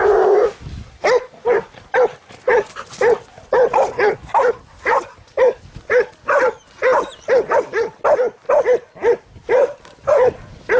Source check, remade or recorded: recorded